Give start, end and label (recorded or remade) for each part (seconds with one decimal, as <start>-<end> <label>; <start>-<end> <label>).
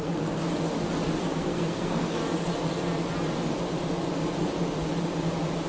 0.0-0.4 remade; 0.4-1.2 recorded; 1.2-2.2 remade; 2.2-5.7 recorded